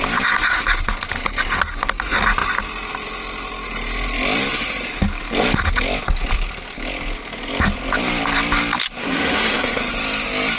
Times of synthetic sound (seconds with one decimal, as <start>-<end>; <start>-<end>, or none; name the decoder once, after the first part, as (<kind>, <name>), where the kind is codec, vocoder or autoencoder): 9.0-9.8 (codec, SNAC)